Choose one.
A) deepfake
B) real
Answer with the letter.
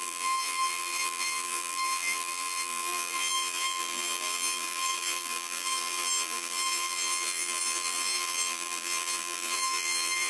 A